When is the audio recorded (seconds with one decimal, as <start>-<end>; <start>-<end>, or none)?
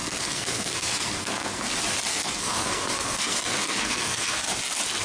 1.7-2.1; 4.5-5.0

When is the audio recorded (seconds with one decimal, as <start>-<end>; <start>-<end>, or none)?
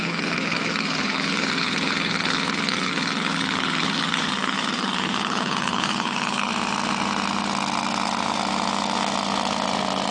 6.5-10.1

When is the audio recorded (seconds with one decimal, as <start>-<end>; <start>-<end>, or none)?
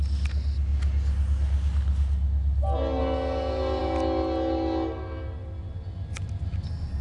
0.0-7.0